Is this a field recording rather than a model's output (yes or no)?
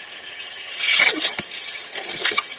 no